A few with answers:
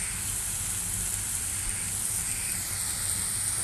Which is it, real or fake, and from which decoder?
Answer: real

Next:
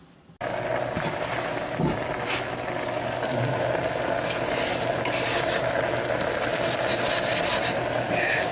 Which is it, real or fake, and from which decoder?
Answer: real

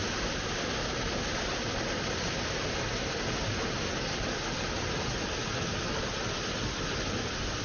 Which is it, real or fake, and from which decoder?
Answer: real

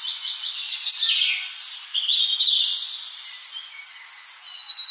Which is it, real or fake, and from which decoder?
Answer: real